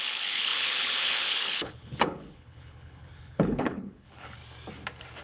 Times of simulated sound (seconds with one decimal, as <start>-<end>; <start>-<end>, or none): 0.0-4.4